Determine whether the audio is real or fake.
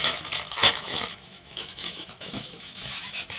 fake